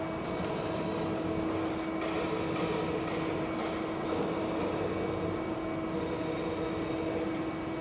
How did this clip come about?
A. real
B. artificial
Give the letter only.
A